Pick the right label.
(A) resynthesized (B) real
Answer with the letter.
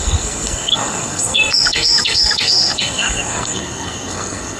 A